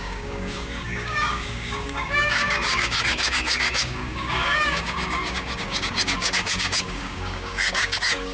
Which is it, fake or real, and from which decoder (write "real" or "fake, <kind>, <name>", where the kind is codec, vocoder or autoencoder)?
fake, codec, DAC